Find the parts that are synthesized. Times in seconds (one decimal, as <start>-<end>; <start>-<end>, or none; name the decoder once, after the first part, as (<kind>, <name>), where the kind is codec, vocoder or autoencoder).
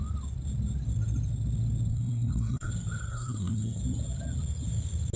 1.9-2.7 (codec, SNAC); 3.1-3.8